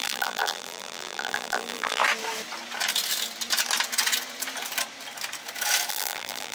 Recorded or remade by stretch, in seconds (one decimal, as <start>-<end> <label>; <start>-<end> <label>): 0.0-2.0 remade; 2.0-5.9 recorded; 5.9-6.5 remade